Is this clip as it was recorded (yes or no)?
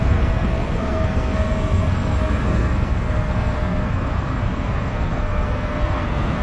no